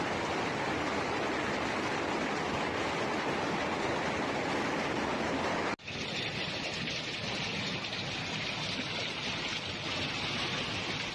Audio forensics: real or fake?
real